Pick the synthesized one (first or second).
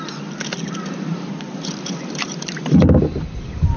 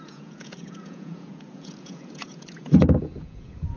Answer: second